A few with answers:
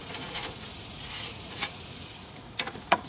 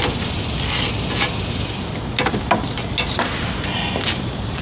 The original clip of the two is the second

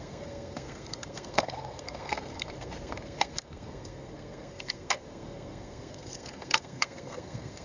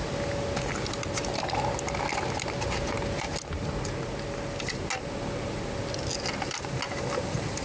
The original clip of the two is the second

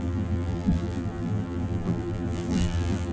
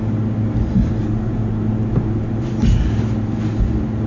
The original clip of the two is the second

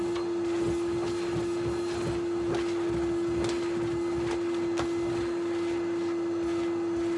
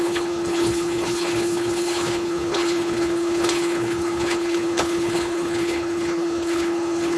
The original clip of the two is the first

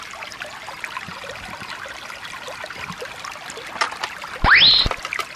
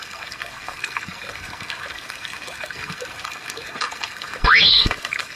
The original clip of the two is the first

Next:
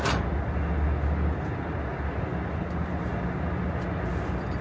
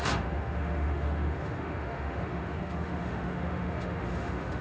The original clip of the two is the first